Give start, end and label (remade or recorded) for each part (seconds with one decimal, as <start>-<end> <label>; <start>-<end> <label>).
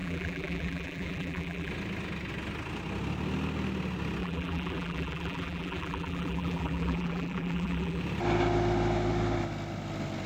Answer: 0.0-1.7 remade; 1.7-4.2 recorded; 4.2-8.0 remade; 8.0-10.3 recorded